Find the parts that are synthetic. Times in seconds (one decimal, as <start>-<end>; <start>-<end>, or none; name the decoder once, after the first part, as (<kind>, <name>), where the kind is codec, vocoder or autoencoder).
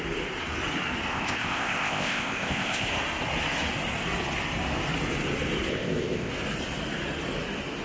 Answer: 1.1-2.9 (codec, ZipCodec); 5.7-6.3